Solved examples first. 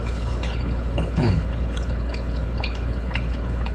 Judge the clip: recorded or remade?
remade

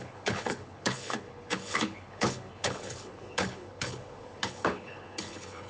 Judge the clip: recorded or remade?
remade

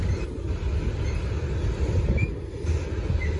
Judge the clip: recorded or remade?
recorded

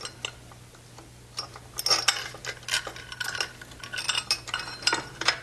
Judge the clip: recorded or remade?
recorded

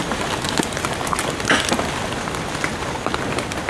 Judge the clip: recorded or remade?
recorded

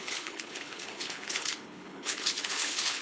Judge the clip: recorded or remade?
remade